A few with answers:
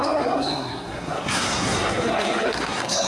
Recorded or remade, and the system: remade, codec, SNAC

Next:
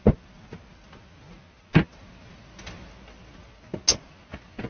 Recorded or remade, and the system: recorded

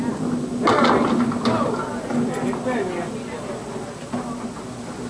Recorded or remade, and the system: recorded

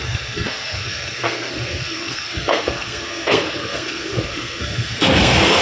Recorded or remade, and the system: remade, codec, SNAC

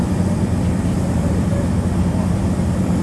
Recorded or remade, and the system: remade, vocoder, BigVGAN v2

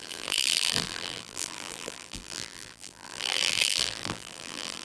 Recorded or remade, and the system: remade, vocoder, BigVGAN v2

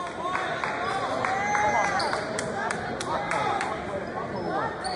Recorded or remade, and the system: recorded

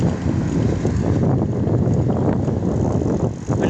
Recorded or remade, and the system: recorded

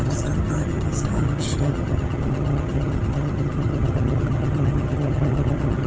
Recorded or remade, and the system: remade, vocoder, HiFi-GAN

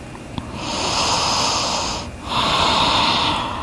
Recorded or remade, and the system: recorded